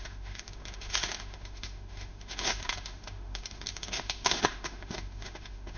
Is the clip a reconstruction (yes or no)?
yes